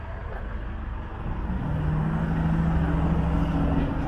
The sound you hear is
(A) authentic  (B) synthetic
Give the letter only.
A